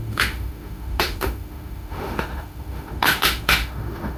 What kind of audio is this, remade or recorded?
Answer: remade